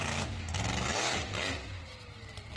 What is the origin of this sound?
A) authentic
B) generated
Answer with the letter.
A